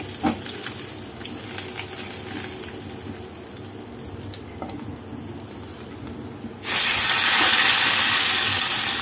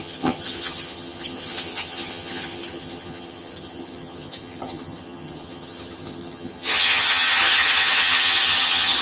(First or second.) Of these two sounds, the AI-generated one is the second